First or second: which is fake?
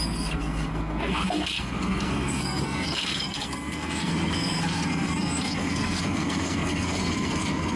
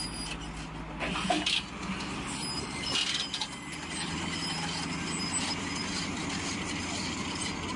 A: first